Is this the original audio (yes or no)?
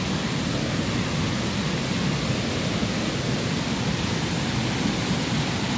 yes